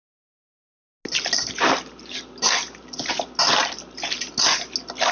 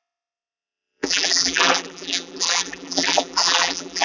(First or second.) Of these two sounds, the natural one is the first